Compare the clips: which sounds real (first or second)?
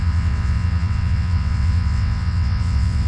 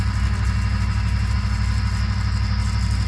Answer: second